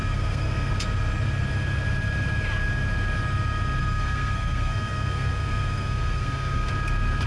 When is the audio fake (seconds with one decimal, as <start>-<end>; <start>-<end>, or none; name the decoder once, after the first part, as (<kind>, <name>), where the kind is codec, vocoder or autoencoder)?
0.0-0.7 (codec, SNAC); 3.8-6.7

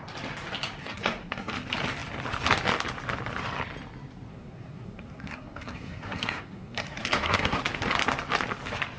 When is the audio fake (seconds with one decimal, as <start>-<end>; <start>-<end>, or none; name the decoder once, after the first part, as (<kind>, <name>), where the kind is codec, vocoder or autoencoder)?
0.8-1.5 (codec, SNAC); 4.3-7.6

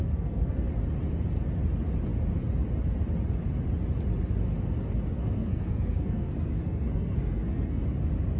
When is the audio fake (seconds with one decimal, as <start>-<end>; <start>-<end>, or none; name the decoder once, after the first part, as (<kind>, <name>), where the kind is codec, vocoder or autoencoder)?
0.0-0.7 (codec, SNAC); 5.1-7.8